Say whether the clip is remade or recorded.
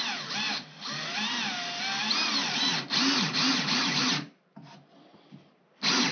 recorded